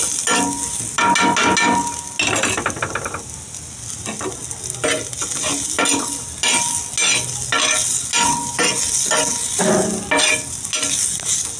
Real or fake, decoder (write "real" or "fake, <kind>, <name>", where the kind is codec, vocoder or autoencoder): real